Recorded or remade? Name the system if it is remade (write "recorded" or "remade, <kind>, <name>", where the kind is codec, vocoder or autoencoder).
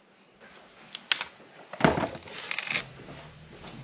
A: recorded